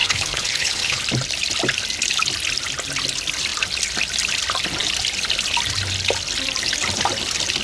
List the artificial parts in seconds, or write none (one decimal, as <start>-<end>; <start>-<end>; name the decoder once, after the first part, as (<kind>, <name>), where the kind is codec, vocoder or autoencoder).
0.0-1.0 (codec, HILCodec)